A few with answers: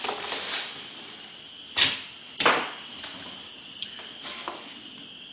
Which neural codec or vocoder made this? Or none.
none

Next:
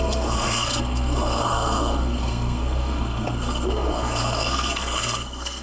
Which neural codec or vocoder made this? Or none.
codec, SNAC